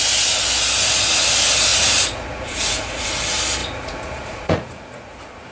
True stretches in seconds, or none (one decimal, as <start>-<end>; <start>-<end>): 0.0-1.7; 3.2-3.6